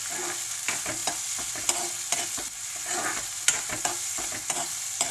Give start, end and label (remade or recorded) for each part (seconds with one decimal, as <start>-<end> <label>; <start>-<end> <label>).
0.0-5.1 recorded